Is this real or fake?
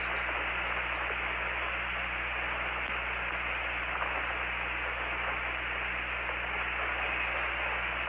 real